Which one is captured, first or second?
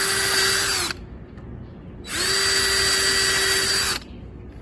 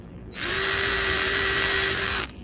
first